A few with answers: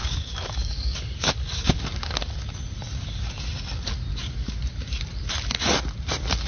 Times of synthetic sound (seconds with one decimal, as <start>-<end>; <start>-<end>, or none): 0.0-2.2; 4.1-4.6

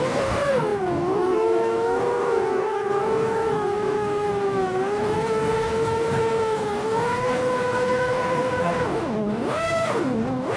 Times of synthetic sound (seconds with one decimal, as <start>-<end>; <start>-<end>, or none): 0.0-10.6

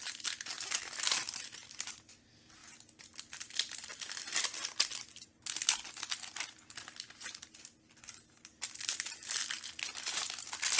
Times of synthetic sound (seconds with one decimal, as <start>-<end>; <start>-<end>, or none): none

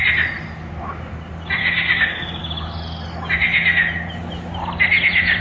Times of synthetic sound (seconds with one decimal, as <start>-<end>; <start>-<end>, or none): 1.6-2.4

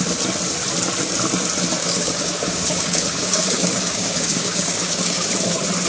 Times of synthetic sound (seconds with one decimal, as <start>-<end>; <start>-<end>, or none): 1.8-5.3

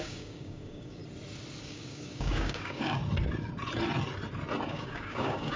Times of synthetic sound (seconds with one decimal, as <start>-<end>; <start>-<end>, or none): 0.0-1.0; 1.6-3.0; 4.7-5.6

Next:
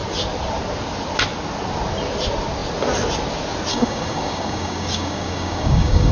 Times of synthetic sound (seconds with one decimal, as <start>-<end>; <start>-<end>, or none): 3.7-6.1